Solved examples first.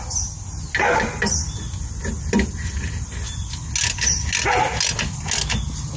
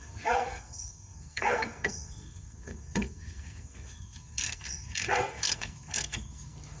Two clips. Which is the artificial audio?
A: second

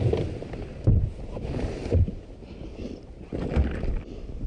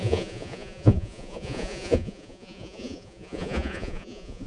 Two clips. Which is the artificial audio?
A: second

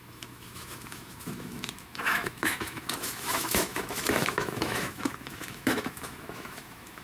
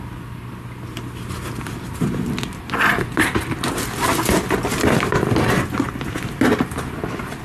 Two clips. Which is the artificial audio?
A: first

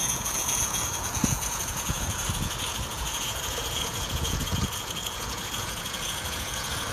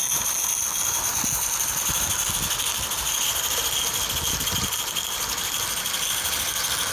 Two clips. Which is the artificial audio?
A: first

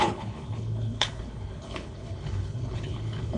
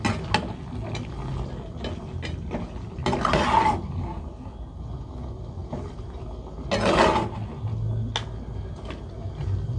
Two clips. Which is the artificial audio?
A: first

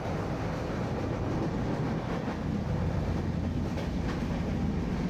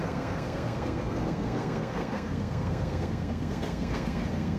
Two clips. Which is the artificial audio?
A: second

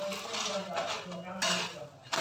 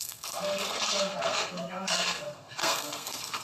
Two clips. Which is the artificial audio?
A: second